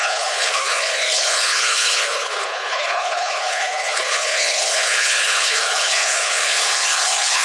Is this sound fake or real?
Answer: fake